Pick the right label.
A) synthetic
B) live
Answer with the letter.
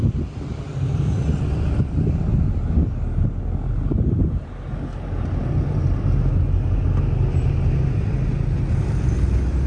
B